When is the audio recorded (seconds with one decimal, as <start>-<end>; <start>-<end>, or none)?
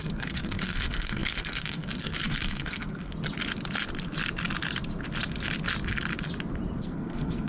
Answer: 3.1-6.8